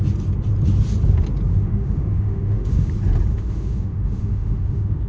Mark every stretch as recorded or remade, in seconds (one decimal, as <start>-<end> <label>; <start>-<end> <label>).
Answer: 0.0-1.5 recorded; 1.5-2.9 remade; 2.9-3.3 recorded; 3.3-5.1 remade